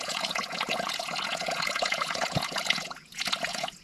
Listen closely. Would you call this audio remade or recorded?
remade